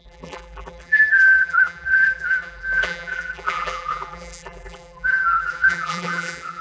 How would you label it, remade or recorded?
remade